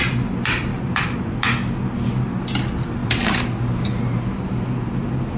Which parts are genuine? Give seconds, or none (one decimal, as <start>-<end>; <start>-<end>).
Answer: 0.0-0.7; 1.4-3.0; 4.4-5.4